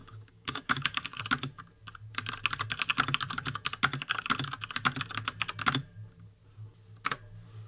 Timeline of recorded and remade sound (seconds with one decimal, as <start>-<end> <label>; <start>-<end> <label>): 0.0-1.2 remade; 1.2-7.7 recorded

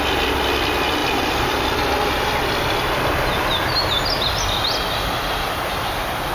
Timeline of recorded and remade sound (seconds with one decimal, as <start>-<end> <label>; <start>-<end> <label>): 0.0-1.0 recorded; 1.0-2.1 remade; 2.1-6.3 recorded

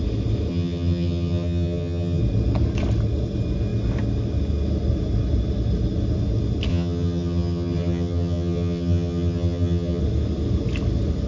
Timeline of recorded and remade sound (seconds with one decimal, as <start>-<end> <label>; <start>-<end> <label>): 0.0-0.5 recorded; 0.5-2.2 remade; 2.2-6.7 recorded; 6.7-10.0 remade; 10.0-11.3 recorded

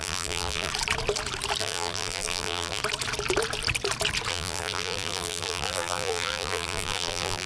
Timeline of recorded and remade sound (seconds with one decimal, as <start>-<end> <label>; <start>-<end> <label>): 0.0-0.7 remade; 0.7-1.6 recorded; 1.6-2.8 remade; 2.8-4.3 recorded; 4.3-7.5 remade

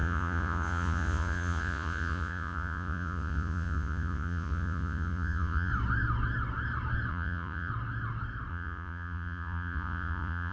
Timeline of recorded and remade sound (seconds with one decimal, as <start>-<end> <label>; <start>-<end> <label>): 0.0-5.7 remade; 5.7-7.1 recorded; 7.1-7.7 remade; 7.7-8.5 recorded; 8.5-10.5 remade

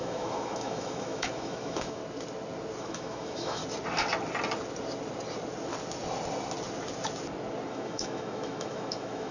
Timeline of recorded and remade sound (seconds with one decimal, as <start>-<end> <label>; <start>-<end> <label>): 0.0-2.0 remade; 2.0-2.8 recorded; 2.8-3.6 remade; 3.6-7.7 recorded; 7.7-9.3 remade